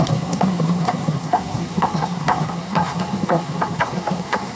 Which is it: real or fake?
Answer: fake